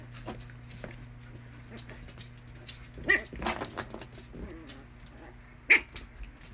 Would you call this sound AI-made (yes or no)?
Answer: no